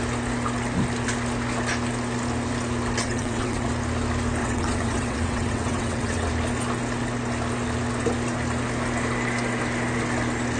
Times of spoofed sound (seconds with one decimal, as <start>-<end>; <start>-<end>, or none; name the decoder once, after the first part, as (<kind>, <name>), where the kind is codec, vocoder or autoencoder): 3.0-3.7 (vocoder, WaveNeXt); 4.4-6.3